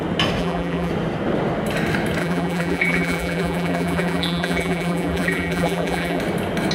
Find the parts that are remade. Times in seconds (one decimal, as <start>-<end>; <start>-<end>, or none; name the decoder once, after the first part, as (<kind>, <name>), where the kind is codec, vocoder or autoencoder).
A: 0.4-0.9 (vocoder, BigVGAN v2); 2.2-6.2